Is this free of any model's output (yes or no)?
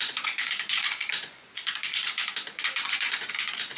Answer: no